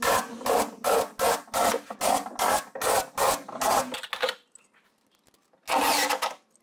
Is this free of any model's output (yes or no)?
yes